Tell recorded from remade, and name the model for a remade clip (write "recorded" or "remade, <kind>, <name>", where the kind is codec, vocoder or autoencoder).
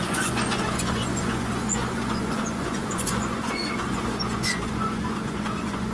remade, vocoder, Vocos